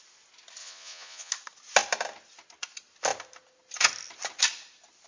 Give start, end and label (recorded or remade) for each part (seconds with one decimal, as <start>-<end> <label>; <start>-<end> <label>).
0.0-0.6 recorded; 0.6-1.3 remade; 1.3-5.1 recorded